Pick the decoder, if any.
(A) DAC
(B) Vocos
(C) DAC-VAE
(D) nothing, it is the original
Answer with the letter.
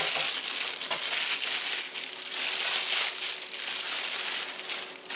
D